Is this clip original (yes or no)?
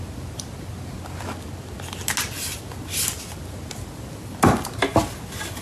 yes